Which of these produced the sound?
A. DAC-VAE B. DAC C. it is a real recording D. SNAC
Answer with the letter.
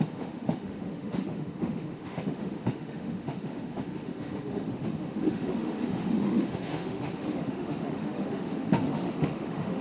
A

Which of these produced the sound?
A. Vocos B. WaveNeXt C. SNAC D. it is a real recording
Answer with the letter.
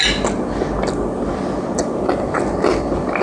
D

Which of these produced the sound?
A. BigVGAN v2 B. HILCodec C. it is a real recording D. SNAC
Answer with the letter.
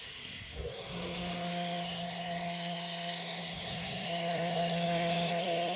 D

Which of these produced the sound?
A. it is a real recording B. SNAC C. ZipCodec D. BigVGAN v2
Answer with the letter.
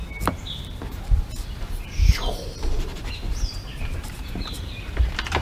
D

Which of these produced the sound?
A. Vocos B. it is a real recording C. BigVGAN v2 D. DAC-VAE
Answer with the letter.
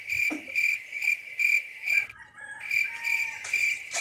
B